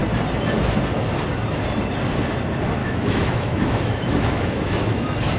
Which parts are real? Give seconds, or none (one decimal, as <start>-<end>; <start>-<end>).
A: 0.0-2.8